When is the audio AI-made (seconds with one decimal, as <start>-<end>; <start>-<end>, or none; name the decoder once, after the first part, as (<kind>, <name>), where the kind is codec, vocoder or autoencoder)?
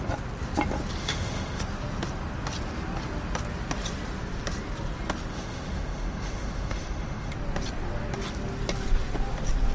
1.0-1.6 (autoencoder, DAC-VAE); 5.3-7.3